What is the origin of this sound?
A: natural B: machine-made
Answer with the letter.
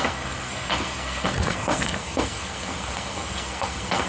B